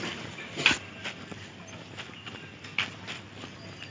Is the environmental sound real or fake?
real